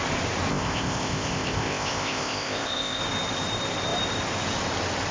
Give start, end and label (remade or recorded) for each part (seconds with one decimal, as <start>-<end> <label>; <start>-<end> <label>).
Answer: 0.0-0.5 recorded; 0.5-3.0 remade; 3.0-5.1 recorded